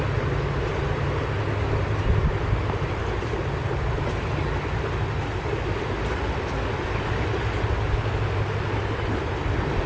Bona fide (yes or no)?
yes